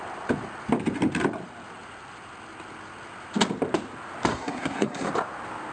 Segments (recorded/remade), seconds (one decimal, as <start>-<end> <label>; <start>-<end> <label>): 0.0-4.3 recorded; 4.3-5.1 remade; 5.1-5.7 recorded